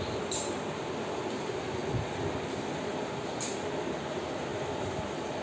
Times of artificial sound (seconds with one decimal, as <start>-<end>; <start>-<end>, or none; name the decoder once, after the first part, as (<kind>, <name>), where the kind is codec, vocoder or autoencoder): none